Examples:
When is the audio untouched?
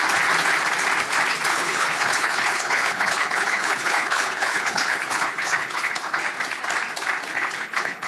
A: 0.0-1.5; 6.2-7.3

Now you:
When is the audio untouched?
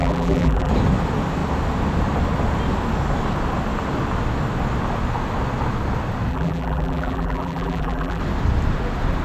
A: 0.7-6.3; 8.2-9.2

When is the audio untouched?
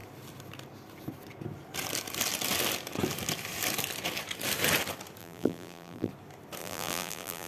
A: 0.0-5.2; 6.1-6.6